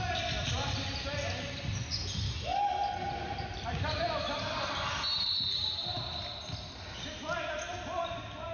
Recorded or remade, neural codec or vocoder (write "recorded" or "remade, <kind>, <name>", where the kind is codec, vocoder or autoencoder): recorded